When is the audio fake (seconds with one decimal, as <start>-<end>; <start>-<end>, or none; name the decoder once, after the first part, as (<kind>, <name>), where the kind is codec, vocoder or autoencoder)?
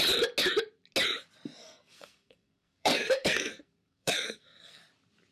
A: 1.6-4.8 (codec, SNAC)